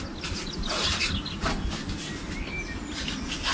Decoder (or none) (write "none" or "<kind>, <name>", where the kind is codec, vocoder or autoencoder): none